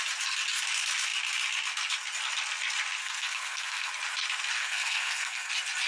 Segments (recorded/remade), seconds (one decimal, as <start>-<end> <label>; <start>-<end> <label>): 0.0-3.0 recorded; 3.0-3.9 remade; 3.9-4.6 recorded; 4.6-5.5 remade; 5.5-5.9 recorded